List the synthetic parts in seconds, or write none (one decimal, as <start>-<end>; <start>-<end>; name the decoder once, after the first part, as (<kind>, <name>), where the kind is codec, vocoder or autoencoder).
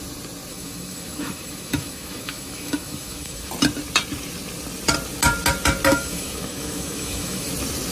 0.5-3.5 (autoencoder, DAC-VAE); 5.9-7.5